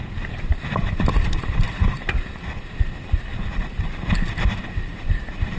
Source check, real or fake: fake